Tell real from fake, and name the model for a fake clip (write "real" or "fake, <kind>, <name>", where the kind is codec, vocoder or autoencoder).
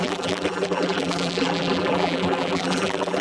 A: fake, vocoder, BigVGAN v2